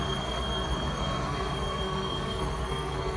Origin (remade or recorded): remade